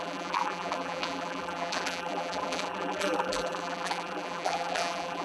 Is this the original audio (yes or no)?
no